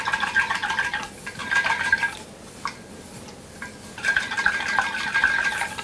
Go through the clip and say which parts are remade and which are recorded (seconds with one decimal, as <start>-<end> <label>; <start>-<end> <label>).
0.0-5.8 recorded